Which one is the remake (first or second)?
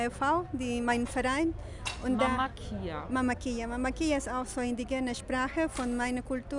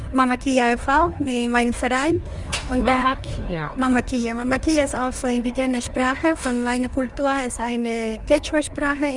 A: second